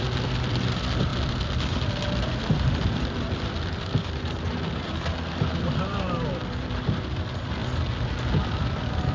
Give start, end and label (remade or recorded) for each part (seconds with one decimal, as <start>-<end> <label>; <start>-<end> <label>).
0.0-7.6 remade; 7.6-8.3 recorded; 8.3-9.1 remade